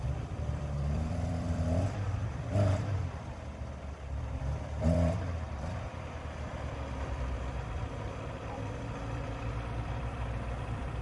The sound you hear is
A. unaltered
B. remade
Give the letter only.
B